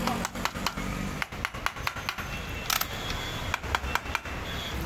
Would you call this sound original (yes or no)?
yes